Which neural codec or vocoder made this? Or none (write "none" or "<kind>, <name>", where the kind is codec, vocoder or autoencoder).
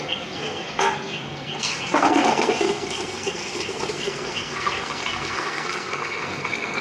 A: codec, SNAC